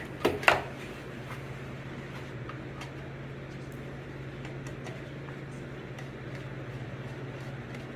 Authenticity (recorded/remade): recorded